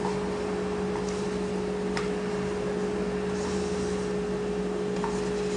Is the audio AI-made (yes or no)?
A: no